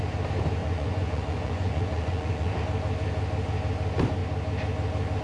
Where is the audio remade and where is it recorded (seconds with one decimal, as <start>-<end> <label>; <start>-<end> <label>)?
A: 0.0-0.6 recorded; 0.6-2.6 remade; 2.6-5.2 recorded